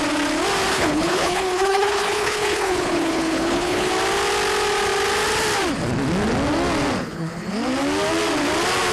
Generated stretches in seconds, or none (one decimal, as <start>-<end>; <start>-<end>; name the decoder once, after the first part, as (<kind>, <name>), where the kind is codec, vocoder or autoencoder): 0.7-3.9 (codec, HILCodec); 7.0-7.5